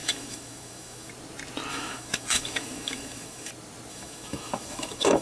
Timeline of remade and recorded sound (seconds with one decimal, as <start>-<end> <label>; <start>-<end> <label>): 0.0-1.1 remade; 1.1-1.7 recorded; 1.7-3.5 remade; 3.5-3.9 recorded; 3.9-5.2 remade